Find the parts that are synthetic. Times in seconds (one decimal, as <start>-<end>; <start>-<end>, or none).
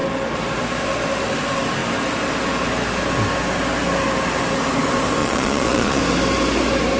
5.2-6.0